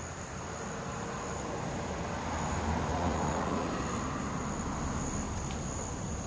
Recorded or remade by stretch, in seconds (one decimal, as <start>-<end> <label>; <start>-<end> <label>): 0.0-2.9 recorded; 2.9-3.7 remade; 3.7-6.3 recorded